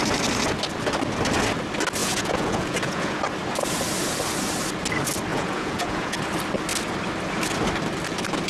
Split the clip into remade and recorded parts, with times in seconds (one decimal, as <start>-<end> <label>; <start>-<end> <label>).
0.0-2.0 recorded; 2.0-3.2 remade; 3.2-5.3 recorded; 5.3-6.2 remade; 6.2-8.5 recorded